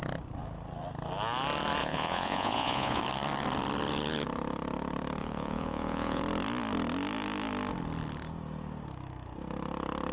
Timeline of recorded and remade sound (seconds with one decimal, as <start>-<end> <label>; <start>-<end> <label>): 0.0-1.8 recorded; 1.8-3.0 remade; 3.0-5.2 recorded; 5.2-6.2 remade; 6.2-10.1 recorded